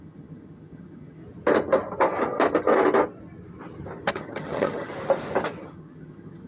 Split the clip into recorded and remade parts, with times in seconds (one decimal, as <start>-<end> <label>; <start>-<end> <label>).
0.0-1.2 remade; 1.2-4.1 recorded; 4.1-4.9 remade; 4.9-5.6 recorded; 5.6-6.5 remade